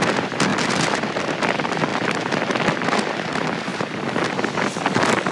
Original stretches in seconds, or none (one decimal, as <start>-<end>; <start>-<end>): 0.0-0.5; 1.1-1.9; 2.6-3.7; 4.4-5.3